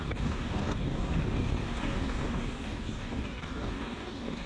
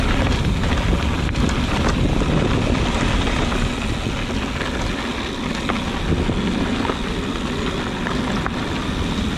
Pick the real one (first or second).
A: second